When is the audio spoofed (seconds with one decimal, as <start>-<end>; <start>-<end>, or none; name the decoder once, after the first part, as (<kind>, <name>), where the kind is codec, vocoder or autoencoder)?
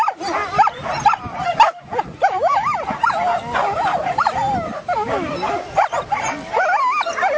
0.4-1.5 (vocoder, BigVGAN v2)